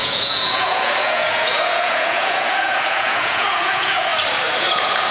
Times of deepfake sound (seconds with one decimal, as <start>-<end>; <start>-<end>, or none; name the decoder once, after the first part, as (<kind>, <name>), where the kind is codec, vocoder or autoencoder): 0.0-4.1 (vocoder, Vocos); 4.6-5.1